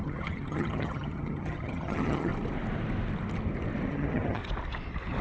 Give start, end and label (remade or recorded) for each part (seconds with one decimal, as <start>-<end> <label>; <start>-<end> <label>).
0.0-2.3 remade; 2.3-3.9 recorded; 3.9-4.4 remade; 4.4-5.2 recorded